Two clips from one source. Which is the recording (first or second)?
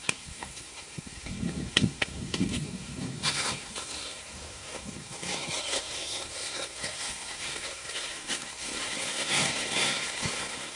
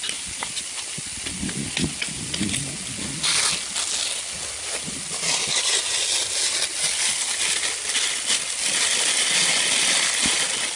second